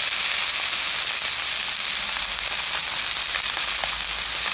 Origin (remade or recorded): recorded